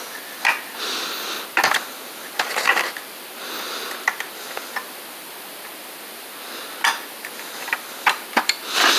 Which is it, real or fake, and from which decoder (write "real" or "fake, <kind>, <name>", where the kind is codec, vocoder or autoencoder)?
real